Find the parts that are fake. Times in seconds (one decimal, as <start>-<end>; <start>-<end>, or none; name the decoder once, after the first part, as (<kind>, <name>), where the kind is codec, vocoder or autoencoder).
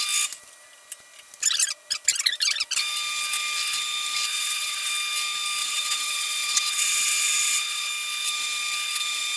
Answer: 4.3-4.9 (vocoder, WaveNeXt); 5.6-7.9